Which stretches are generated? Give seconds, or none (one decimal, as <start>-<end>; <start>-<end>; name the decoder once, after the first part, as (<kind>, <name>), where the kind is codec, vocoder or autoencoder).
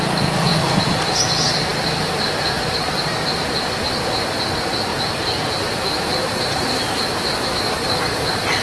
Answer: none